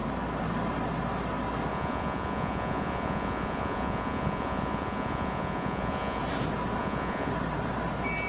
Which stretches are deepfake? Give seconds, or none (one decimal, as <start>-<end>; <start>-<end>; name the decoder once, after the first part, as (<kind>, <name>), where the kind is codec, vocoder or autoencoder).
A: 1.7-6.2 (vocoder, Vocos); 6.8-7.3